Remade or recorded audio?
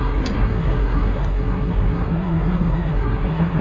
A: remade